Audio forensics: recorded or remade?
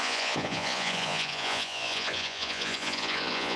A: remade